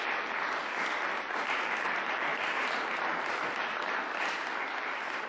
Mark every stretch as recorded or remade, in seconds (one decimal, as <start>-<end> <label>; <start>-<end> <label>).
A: 0.0-2.3 recorded; 2.3-5.3 remade